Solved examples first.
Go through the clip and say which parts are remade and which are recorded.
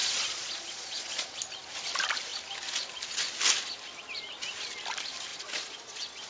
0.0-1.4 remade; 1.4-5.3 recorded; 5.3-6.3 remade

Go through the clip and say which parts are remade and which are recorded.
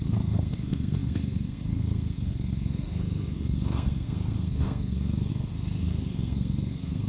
0.0-7.1 remade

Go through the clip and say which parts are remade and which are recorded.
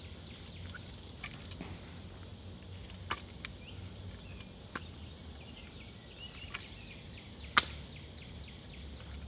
0.0-9.3 recorded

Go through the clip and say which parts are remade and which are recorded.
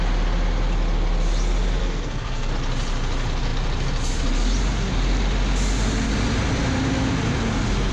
0.0-1.8 recorded; 1.8-2.5 remade; 2.5-7.9 recorded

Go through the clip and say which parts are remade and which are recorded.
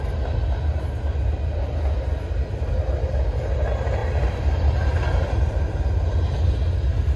0.0-4.0 recorded; 4.0-5.8 remade; 5.8-7.2 recorded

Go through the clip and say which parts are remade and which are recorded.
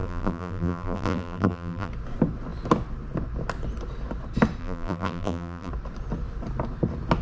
0.0-1.9 remade; 1.9-4.6 recorded; 4.6-5.7 remade; 5.7-7.2 recorded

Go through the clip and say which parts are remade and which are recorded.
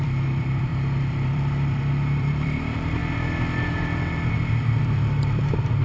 0.0-3.0 remade; 3.0-4.8 recorded; 4.8-5.8 remade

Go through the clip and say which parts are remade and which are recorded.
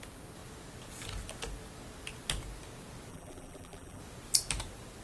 0.0-3.1 recorded; 3.1-4.0 remade; 4.0-5.0 recorded